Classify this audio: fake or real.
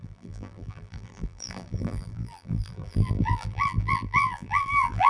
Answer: fake